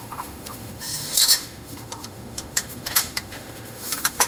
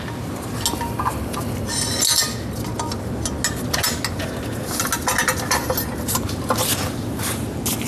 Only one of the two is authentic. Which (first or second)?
second